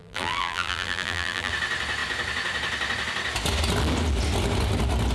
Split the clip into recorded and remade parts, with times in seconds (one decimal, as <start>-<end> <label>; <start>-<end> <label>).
0.0-1.5 remade; 1.5-5.1 recorded